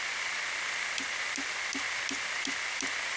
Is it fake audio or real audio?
real